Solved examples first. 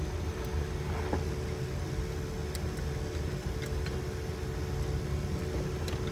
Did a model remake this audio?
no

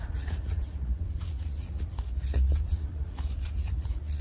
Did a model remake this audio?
yes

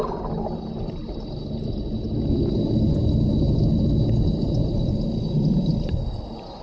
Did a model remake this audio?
no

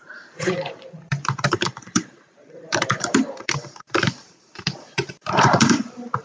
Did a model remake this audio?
yes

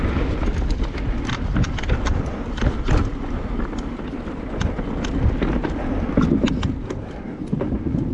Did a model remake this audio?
no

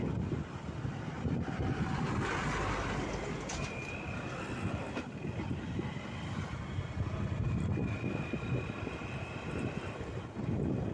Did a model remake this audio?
no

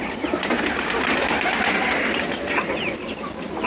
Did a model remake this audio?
no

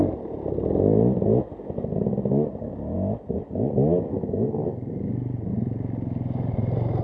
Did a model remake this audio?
no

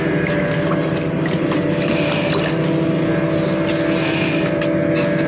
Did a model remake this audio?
no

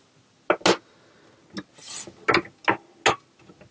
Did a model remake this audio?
no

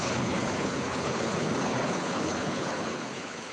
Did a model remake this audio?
yes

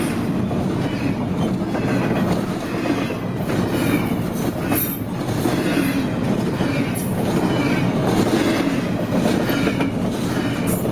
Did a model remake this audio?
no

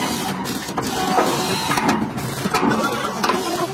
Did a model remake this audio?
no